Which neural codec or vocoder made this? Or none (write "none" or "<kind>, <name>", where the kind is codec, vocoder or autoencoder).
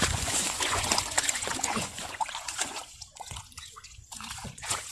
vocoder, Vocos